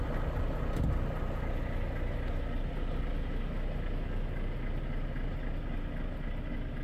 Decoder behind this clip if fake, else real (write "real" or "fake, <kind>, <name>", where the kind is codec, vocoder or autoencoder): real